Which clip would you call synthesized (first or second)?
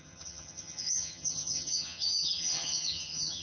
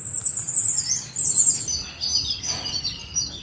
first